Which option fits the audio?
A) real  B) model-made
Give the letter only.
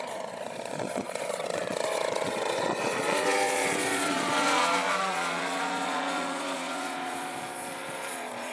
B